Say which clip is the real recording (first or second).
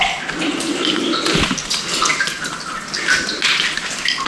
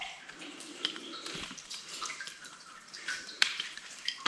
first